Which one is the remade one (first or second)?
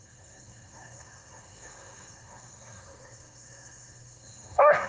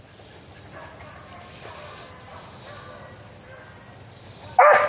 first